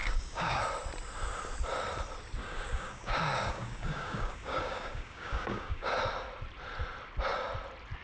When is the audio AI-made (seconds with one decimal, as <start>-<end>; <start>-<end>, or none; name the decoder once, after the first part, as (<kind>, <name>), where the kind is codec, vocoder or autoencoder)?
0.0-0.6 (codec, DAC); 2.4-6.0